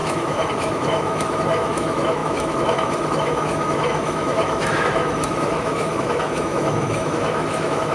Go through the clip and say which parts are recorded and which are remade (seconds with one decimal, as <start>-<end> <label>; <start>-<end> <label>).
0.0-7.9 remade